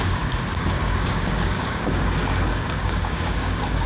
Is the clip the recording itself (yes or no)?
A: no